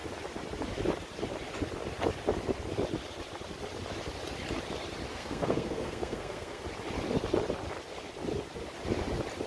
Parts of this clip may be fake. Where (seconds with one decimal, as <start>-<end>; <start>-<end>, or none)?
5.1-6.6